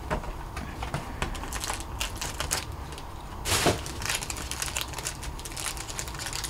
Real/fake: real